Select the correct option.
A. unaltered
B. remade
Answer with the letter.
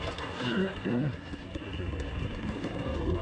B